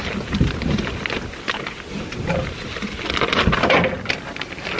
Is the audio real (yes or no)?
yes